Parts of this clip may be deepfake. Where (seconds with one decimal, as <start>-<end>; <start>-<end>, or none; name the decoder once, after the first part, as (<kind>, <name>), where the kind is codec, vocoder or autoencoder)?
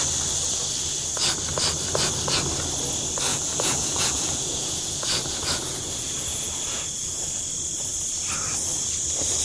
3.3-7.3 (vocoder, Vocos)